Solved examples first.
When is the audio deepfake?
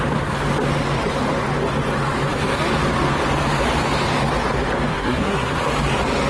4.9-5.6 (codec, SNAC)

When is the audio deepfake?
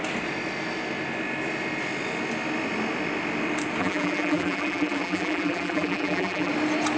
3.8-6.5 (vocoder, BigVGAN v2)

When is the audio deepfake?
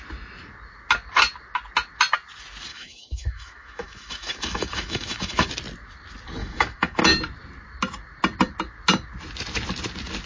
2.7-5.5 (autoencoder, DAC-VAE); 6.4-7.0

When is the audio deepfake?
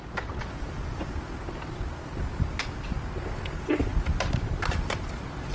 none